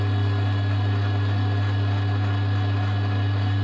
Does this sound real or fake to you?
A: real